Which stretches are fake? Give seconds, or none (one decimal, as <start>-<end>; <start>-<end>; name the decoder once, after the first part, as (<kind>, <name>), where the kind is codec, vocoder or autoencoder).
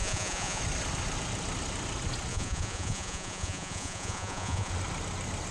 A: 0.0-0.6 (vocoder, Vocos); 2.3-4.7